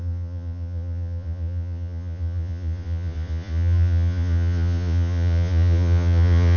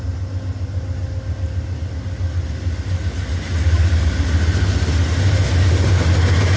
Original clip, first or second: second